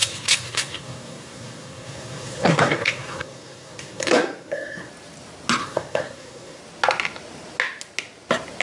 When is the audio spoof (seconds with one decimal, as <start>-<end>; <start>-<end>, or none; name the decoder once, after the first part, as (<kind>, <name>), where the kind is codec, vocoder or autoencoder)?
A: 0.0-4.9 (codec, SNAC); 5.6-6.6